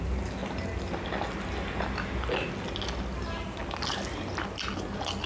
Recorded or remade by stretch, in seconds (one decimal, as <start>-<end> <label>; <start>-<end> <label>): 0.0-5.3 recorded